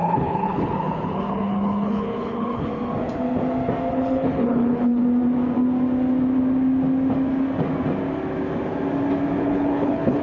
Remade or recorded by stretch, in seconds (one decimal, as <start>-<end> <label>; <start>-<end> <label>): 0.0-2.7 remade; 2.7-3.9 recorded; 3.9-5.0 remade; 5.0-9.4 recorded; 9.4-10.2 remade